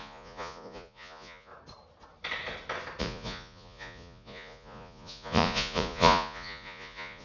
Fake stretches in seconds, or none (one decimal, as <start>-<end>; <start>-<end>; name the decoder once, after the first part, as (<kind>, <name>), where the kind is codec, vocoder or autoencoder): 0.0-1.5 (vocoder, Vocos); 3.0-7.2